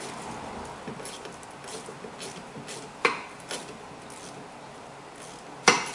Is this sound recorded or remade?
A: recorded